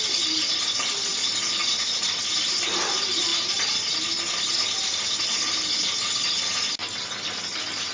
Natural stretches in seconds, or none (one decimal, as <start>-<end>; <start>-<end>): 0.0-7.9